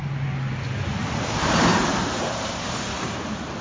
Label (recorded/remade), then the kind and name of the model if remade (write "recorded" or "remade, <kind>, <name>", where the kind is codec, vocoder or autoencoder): recorded